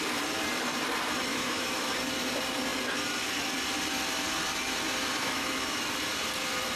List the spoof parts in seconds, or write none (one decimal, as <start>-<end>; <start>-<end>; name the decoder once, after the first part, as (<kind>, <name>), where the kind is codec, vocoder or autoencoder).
1.3-1.9 (autoencoder, DAC-VAE); 5.2-5.8